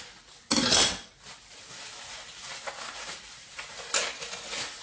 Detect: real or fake real